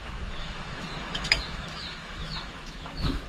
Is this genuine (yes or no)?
no